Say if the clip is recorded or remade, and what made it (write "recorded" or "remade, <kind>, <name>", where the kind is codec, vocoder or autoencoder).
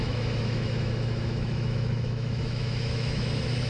remade, autoencoder, DAC-VAE